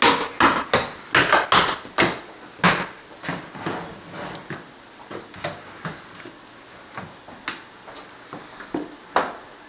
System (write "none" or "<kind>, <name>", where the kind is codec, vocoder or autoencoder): none